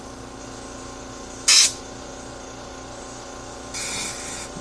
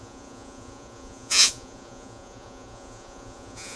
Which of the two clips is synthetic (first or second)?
second